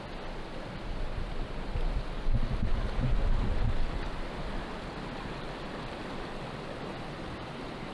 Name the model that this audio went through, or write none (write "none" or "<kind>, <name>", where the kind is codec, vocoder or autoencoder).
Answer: none